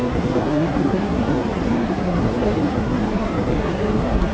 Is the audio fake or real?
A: fake